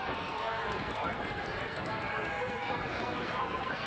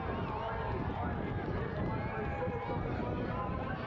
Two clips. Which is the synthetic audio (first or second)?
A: first